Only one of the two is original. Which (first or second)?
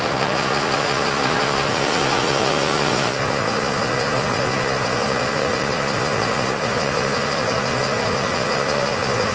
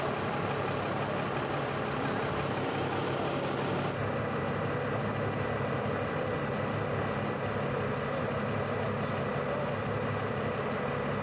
second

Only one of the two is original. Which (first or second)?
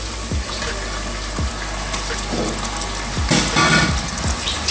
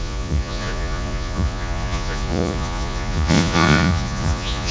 first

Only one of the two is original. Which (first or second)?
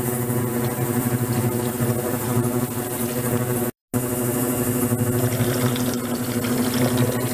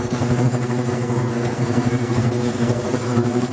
first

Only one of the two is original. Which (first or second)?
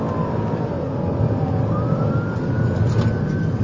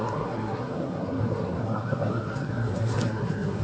first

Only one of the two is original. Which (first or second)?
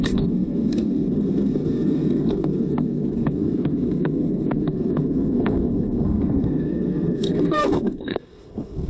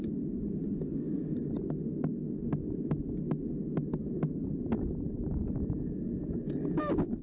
second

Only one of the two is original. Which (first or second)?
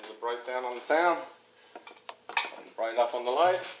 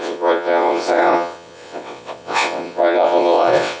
first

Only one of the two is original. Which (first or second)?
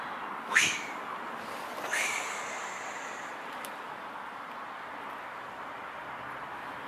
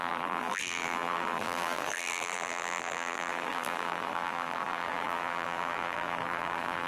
first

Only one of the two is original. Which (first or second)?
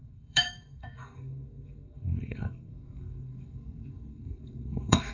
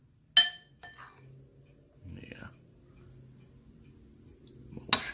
second